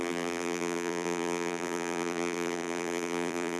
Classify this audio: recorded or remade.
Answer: remade